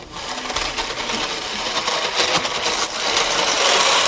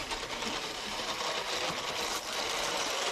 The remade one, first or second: second